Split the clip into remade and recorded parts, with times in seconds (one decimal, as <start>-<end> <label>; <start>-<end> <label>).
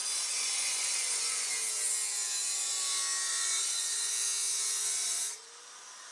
0.0-1.5 remade; 1.5-3.3 recorded; 3.3-4.1 remade; 4.1-4.8 recorded; 4.8-5.4 remade; 5.4-6.1 recorded